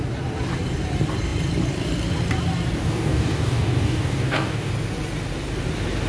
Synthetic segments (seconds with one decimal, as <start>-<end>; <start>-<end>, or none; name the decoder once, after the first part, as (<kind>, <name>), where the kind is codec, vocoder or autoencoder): 2.8-4.7 (codec, DAC)